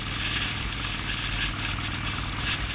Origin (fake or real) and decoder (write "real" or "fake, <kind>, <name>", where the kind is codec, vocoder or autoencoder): real